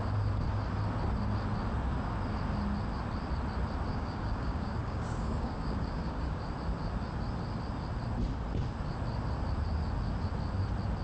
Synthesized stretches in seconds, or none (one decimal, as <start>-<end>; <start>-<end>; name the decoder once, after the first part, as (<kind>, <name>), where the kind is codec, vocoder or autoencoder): 3.9-6.4 (codec, DAC)